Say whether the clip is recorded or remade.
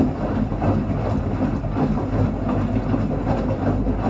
recorded